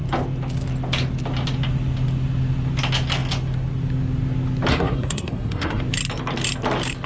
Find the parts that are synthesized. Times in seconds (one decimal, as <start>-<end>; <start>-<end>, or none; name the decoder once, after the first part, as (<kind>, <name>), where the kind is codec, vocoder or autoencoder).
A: 4.7-5.8 (codec, SNAC)